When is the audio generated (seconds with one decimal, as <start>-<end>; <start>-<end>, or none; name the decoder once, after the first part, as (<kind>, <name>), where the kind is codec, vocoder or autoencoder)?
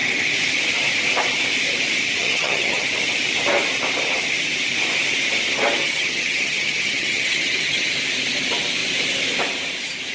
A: 2.2-2.9 (vocoder, HiFi-GAN); 5.8-7.9